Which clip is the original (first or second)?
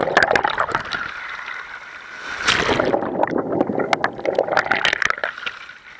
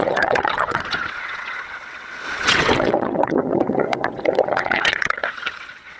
first